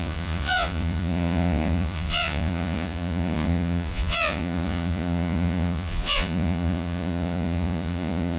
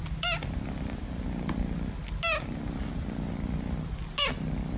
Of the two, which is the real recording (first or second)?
second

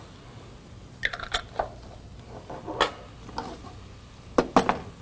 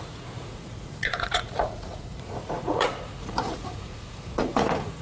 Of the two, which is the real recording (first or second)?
first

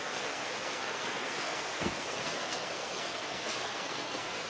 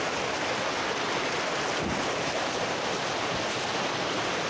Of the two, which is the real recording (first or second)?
second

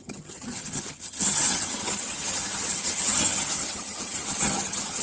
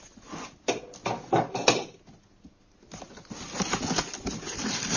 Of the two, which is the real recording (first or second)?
second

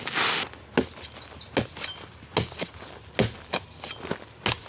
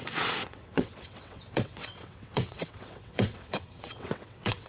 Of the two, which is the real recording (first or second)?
first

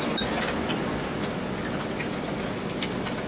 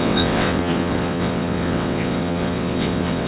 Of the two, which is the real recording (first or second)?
first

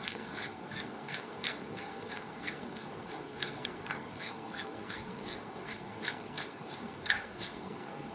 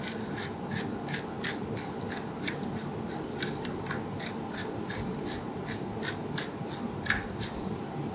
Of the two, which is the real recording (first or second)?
second